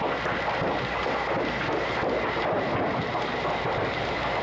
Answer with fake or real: real